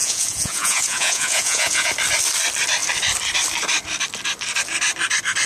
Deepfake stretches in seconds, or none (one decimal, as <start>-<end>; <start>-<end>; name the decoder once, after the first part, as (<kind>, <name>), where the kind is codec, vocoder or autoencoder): 0.0-1.9 (vocoder, Vocos)